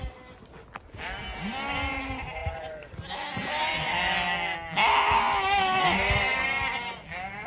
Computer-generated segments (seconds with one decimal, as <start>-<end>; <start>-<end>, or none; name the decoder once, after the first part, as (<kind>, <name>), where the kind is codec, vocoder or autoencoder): 2.4-2.9 (vocoder, BigVGAN v2)